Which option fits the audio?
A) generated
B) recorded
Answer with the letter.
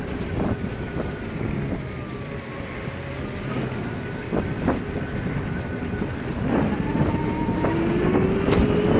B